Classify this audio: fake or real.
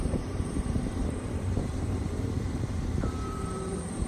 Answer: fake